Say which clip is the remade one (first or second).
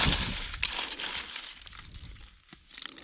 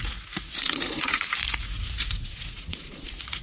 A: second